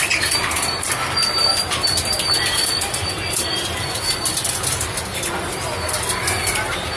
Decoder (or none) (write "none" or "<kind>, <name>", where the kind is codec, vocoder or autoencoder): none